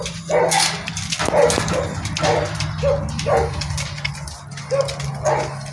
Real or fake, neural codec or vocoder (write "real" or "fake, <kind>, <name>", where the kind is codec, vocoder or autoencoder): real